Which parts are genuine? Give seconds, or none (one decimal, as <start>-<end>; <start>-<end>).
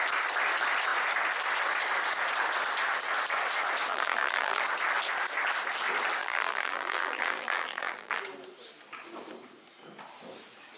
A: 0.0-3.9; 4.6-6.2; 8.2-10.8